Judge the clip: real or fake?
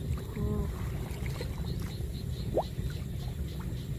real